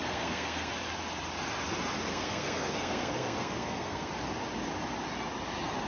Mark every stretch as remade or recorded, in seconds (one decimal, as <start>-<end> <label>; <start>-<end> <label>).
0.0-0.7 remade; 0.7-2.1 recorded; 2.1-4.1 remade; 4.1-5.9 recorded